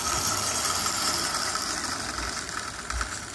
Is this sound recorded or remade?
remade